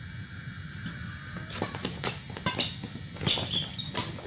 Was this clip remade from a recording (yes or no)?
no